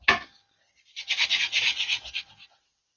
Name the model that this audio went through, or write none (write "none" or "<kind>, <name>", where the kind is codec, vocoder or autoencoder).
none